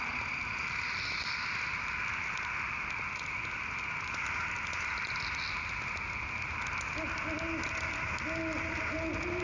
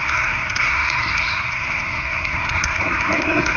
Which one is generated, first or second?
second